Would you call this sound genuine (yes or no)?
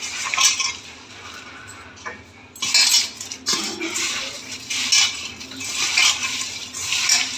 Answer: yes